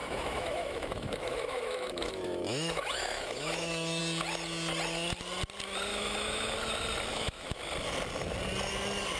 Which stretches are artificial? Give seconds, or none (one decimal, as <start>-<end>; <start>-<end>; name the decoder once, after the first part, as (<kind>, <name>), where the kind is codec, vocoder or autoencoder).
0.0-4.0 (autoencoder, DAC-VAE); 5.9-6.5; 7.1-7.6